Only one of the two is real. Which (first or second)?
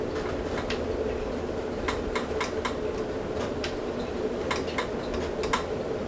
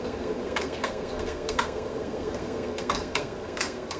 first